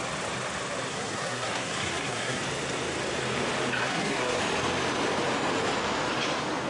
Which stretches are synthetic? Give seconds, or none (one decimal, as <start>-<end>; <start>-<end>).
0.9-2.4; 3.8-4.4